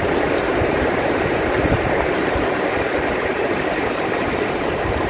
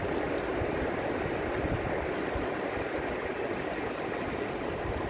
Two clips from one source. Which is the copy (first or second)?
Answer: first